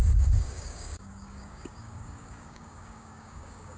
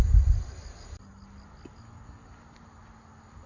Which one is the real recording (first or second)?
second